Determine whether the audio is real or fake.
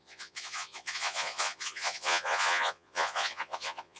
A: fake